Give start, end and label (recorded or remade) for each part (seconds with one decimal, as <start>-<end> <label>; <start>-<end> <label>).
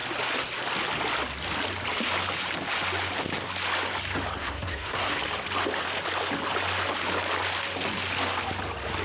0.0-4.4 recorded; 4.4-5.2 remade; 5.2-9.0 recorded